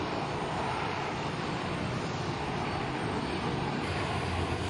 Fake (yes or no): yes